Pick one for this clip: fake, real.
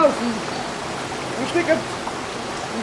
real